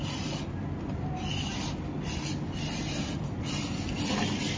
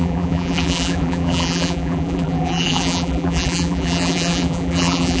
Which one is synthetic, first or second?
second